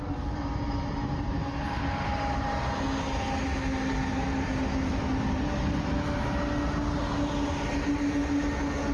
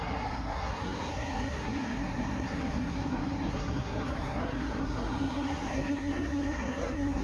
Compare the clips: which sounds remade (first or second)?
second